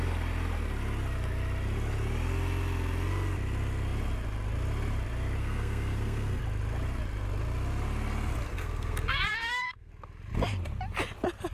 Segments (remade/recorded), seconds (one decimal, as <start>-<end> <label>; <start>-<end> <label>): 0.0-5.4 recorded; 5.4-6.4 remade; 6.4-8.5 recorded; 8.5-9.9 remade; 9.9-11.5 recorded